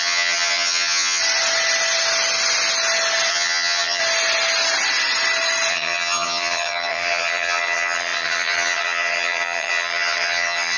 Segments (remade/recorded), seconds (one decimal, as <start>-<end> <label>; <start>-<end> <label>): 0.0-1.2 remade; 1.2-3.3 recorded; 3.3-4.0 remade; 4.0-5.7 recorded; 5.7-10.8 remade